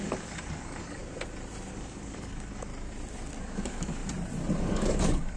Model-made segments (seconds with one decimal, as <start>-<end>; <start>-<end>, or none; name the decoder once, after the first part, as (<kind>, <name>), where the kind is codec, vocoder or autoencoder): 0.0-1.0 (codec, DAC); 1.7-2.7; 3.4-4.0; 4.6-5.4